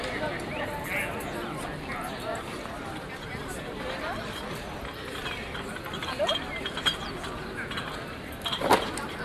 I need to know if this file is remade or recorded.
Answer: recorded